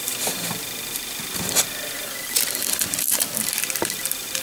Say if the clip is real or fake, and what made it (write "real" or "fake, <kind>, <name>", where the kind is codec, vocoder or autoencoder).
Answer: real